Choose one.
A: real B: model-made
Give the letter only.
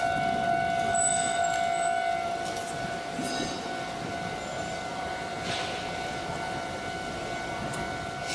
A